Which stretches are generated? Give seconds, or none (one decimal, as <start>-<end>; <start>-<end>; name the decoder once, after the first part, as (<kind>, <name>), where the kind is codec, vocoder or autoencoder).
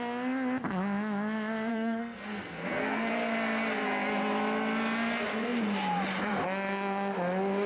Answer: 1.7-3.1 (codec, SNAC)